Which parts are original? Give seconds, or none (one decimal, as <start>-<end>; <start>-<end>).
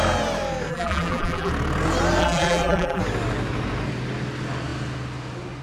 0.0-0.7; 1.5-2.2; 3.0-5.6